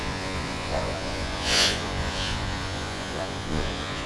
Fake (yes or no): yes